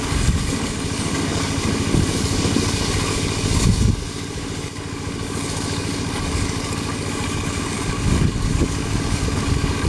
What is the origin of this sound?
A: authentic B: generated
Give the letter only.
B